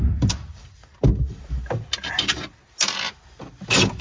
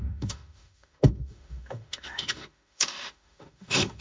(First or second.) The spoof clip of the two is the second